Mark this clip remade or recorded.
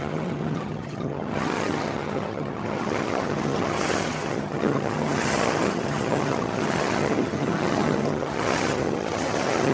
remade